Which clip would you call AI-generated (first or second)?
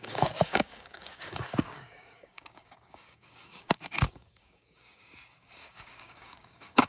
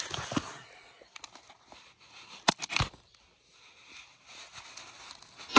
first